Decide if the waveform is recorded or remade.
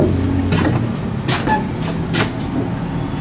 recorded